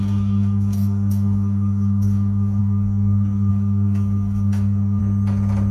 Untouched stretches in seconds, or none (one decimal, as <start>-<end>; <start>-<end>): 5.0-5.7